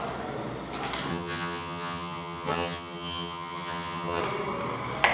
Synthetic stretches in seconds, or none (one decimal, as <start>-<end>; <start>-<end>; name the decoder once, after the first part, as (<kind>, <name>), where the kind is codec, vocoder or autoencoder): 1.1-4.2 (vocoder, HiFi-GAN)